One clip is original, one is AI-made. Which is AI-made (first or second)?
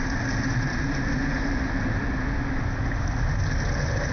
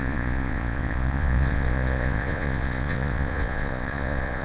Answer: second